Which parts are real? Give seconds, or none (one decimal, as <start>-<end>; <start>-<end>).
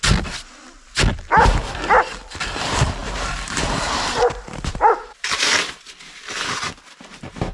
0.0-3.0; 5.6-7.5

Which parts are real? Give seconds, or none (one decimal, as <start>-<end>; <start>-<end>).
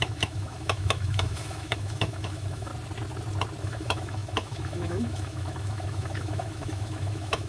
2.7-3.6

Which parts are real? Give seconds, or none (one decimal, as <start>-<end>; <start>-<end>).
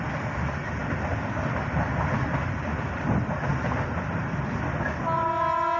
0.0-5.8